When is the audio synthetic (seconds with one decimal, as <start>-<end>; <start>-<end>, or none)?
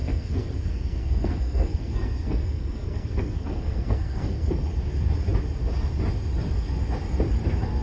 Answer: 0.0-4.5